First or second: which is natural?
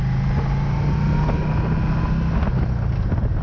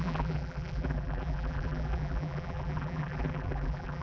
first